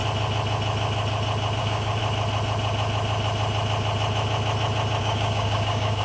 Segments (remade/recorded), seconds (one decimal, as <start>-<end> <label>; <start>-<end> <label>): 0.0-1.6 recorded; 1.6-2.0 remade; 2.0-5.0 recorded; 5.0-6.0 remade